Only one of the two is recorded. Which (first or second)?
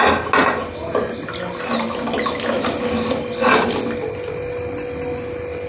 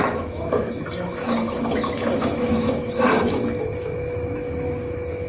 first